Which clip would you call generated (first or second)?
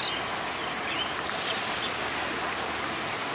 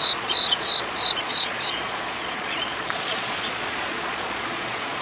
second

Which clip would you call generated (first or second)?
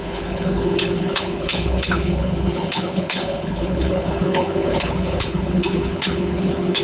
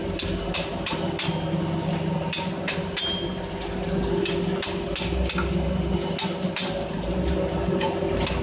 first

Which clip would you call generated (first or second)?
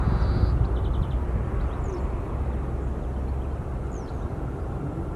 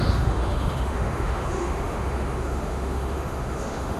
second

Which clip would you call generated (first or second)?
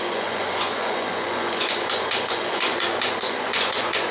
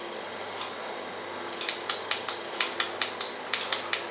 first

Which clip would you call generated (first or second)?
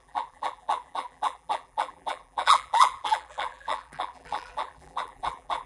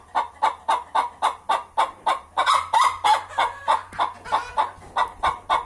first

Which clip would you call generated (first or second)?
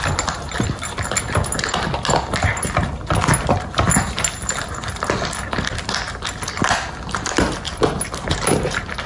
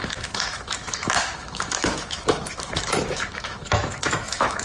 second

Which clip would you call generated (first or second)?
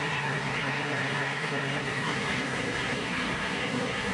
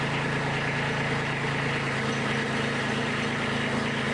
first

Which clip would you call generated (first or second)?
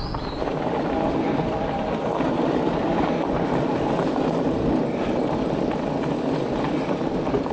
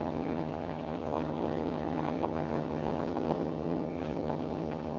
second